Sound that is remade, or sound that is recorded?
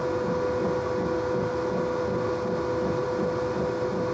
recorded